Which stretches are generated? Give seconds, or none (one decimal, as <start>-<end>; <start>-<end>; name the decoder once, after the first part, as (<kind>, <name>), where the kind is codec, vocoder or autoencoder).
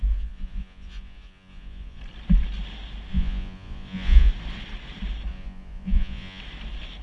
0.0-2.0 (vocoder, Vocos); 3.1-4.3; 5.3-6.4